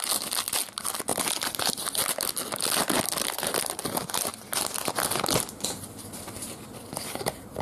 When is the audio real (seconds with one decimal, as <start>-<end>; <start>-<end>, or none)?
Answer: 0.0-7.6